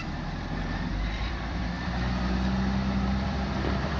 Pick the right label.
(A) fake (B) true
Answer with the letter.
A